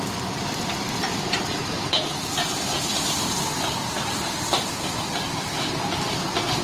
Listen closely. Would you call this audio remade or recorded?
remade